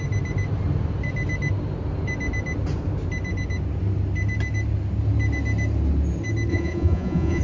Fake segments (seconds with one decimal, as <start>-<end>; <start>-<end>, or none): 6.5-7.4